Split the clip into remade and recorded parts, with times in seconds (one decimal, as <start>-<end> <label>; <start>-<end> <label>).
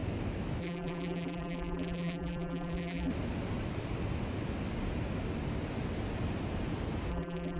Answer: 0.0-0.6 recorded; 0.6-3.1 remade; 3.1-7.1 recorded; 7.1-7.6 remade